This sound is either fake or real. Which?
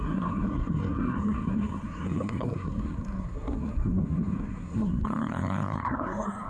fake